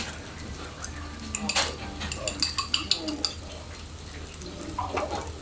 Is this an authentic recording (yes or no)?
yes